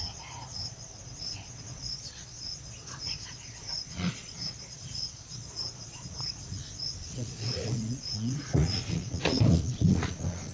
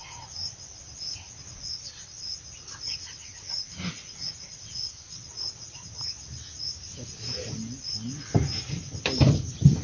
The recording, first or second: second